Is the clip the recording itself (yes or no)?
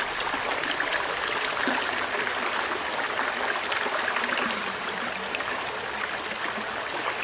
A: yes